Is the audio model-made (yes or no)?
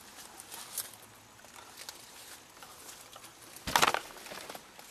no